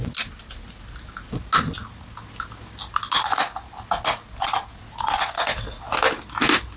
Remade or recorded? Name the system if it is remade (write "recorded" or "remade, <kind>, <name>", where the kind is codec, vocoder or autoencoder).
recorded